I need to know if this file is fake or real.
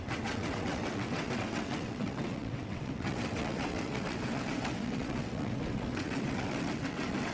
fake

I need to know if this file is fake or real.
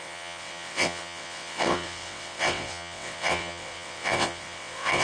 fake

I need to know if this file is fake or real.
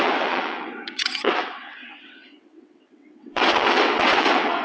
fake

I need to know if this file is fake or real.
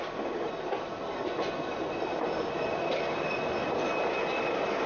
real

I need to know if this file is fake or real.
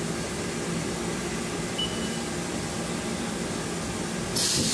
real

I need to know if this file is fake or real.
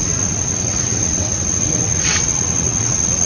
fake